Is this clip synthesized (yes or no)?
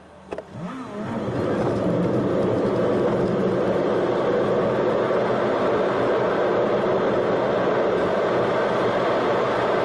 no